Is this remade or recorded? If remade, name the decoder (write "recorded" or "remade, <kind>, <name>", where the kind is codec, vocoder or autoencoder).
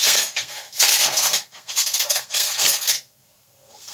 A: remade, codec, SNAC